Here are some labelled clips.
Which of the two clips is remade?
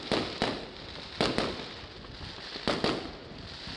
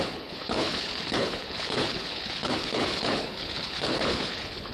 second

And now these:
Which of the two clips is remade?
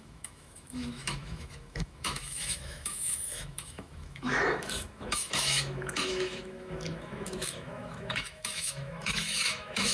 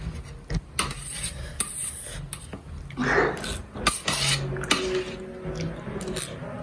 first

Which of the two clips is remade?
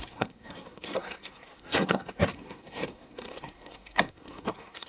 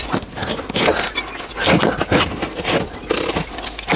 first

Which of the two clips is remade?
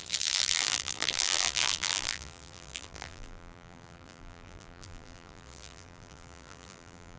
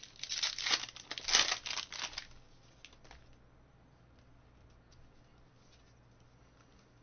first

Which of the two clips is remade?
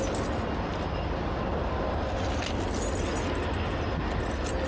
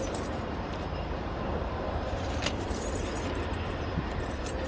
second